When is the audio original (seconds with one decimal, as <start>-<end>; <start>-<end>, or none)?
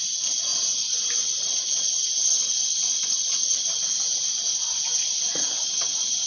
0.0-6.3